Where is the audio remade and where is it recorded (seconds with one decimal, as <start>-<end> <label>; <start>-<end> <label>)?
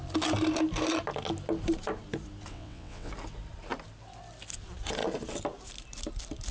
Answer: 0.0-2.5 recorded; 2.5-3.1 remade; 3.1-6.5 recorded